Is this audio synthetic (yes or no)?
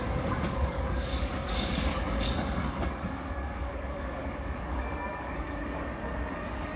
yes